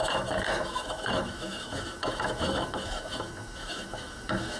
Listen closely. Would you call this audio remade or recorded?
remade